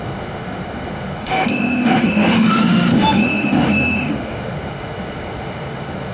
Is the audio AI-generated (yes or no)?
yes